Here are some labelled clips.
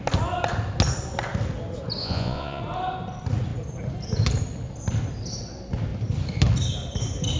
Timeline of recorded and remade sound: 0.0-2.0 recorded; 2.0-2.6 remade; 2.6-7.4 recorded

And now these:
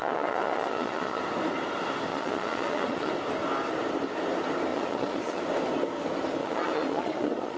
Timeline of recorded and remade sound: 0.0-1.2 remade; 1.2-2.1 recorded; 2.1-3.1 remade; 3.1-4.7 recorded; 4.7-5.4 remade; 5.4-6.4 recorded; 6.4-7.6 remade

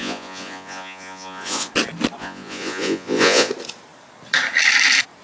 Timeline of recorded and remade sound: 0.0-1.7 remade; 1.7-2.2 recorded; 2.2-3.5 remade; 3.5-5.2 recorded